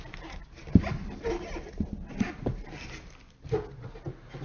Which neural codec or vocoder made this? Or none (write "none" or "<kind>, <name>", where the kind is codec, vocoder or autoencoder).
none